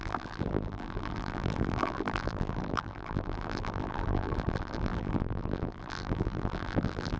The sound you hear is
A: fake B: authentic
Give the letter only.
A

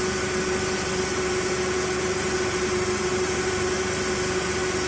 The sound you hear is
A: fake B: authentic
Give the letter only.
B